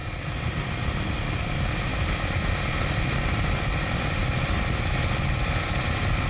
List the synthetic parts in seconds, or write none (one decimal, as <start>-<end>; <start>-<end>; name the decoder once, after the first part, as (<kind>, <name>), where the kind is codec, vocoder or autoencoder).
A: none